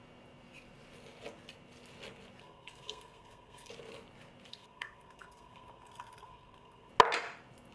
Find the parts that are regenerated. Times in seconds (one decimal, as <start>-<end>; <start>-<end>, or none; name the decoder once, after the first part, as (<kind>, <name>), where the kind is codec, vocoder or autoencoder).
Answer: 2.4-3.7 (codec, SNAC); 4.5-6.9